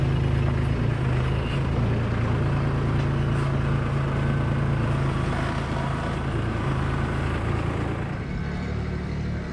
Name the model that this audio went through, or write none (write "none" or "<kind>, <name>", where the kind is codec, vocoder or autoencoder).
none